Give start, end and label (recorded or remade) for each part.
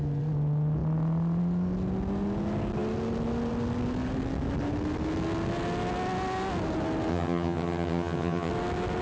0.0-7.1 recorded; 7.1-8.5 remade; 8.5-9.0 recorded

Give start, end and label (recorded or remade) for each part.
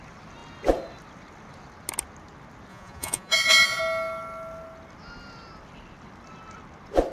0.0-2.7 recorded; 2.7-3.8 remade; 3.8-7.1 recorded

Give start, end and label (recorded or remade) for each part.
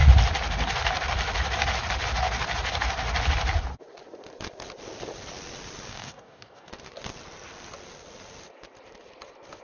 0.0-5.9 recorded; 5.9-6.7 remade; 6.7-9.6 recorded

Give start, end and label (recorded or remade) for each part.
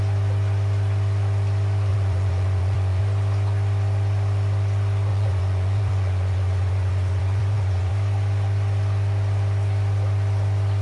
0.0-1.9 recorded; 1.9-3.0 remade; 3.0-5.1 recorded; 5.1-7.9 remade; 7.9-10.8 recorded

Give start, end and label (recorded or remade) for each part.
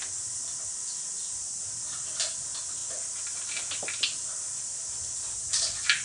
0.0-6.0 recorded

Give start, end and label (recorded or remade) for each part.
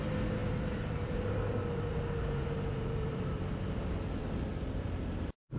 0.0-0.4 recorded; 0.4-1.4 remade; 1.4-2.2 recorded; 2.2-3.8 remade; 3.8-5.6 recorded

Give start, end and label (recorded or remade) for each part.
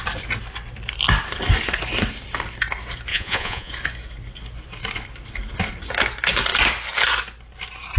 0.0-3.1 recorded; 3.1-3.7 remade; 3.7-8.0 recorded